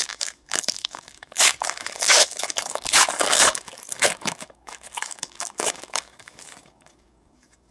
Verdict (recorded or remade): remade